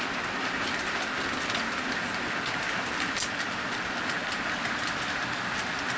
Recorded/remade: recorded